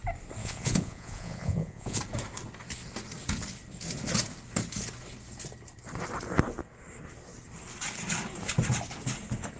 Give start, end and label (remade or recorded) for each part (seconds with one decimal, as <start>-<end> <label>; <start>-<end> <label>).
0.0-0.4 recorded; 0.4-2.0 remade; 2.0-9.6 recorded